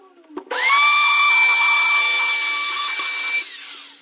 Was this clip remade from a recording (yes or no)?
no